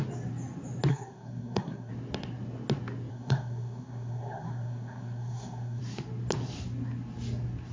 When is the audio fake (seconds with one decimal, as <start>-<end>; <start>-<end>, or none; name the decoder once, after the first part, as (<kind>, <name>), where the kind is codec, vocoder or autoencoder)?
0.9-1.9 (codec, SNAC); 3.1-5.8